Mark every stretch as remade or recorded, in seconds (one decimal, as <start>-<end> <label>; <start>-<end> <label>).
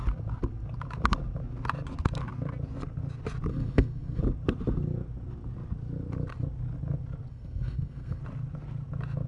0.0-3.5 recorded; 3.5-4.2 remade; 4.2-7.3 recorded; 7.3-8.2 remade; 8.2-9.3 recorded